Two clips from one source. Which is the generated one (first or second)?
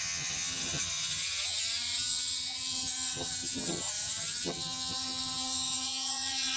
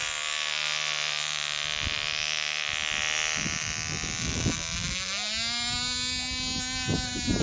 first